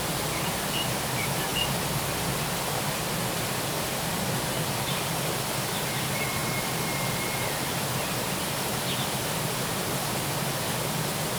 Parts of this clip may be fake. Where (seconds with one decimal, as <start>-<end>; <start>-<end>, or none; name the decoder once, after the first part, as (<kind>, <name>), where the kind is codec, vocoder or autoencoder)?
none